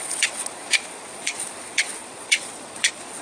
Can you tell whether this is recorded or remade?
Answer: remade